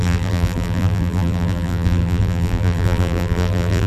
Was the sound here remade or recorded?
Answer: remade